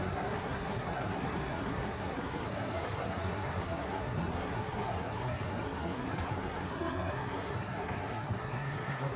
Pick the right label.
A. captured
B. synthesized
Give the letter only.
B